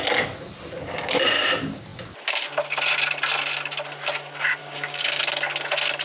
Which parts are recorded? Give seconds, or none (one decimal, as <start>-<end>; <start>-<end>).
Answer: 0.0-4.6; 5.2-6.0

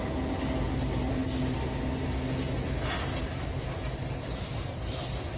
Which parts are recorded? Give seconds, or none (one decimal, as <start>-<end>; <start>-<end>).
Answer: 0.0-5.4